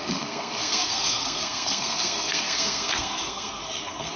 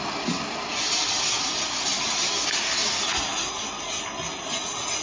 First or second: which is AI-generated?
first